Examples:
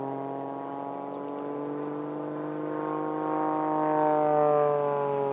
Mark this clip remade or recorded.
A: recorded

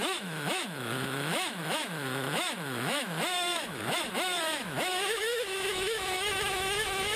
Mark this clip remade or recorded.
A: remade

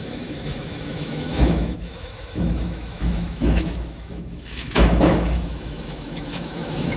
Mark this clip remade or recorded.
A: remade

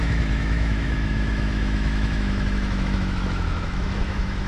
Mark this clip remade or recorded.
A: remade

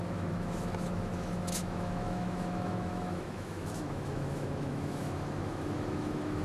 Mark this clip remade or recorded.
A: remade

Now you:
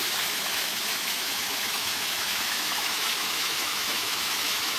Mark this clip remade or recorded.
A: remade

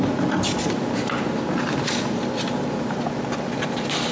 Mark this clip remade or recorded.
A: recorded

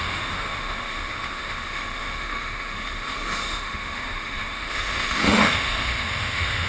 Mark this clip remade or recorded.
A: remade